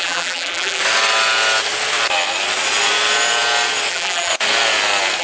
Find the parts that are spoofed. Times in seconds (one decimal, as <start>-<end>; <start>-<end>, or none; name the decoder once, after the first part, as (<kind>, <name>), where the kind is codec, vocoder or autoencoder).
0.0-0.8 (vocoder, BigVGAN v2); 3.9-4.3